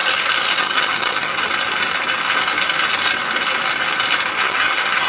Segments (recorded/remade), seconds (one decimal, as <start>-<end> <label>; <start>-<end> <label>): 0.0-0.6 recorded; 0.6-1.3 remade; 1.3-4.4 recorded; 4.4-5.1 remade